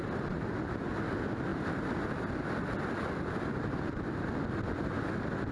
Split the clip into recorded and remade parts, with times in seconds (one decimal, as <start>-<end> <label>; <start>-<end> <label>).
0.0-5.5 recorded